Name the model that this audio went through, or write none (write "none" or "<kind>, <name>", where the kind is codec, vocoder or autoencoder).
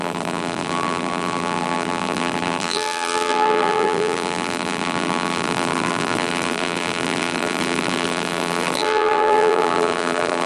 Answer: vocoder, BigVGAN v2